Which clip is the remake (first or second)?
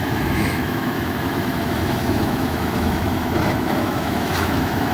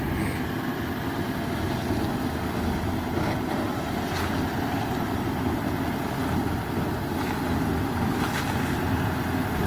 first